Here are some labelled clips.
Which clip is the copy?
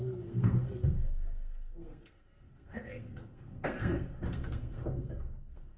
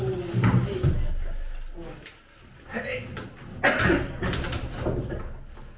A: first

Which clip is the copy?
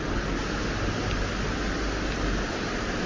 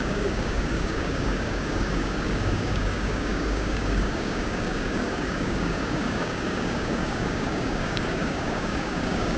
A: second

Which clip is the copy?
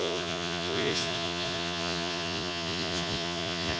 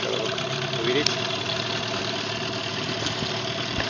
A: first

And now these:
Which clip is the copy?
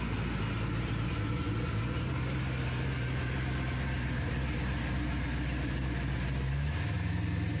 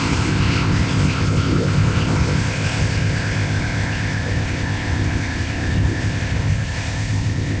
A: second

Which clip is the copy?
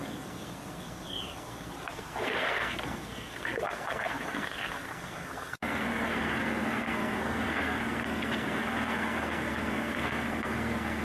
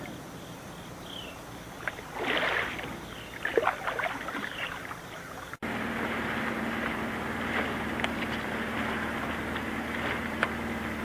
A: first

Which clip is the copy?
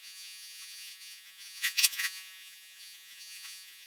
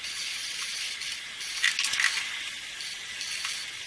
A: first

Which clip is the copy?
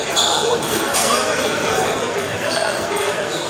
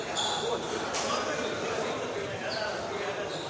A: first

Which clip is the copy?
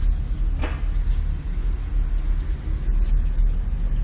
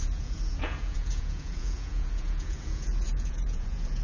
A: second